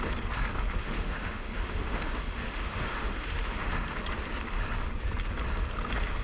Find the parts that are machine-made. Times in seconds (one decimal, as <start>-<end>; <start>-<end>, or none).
0.8-3.7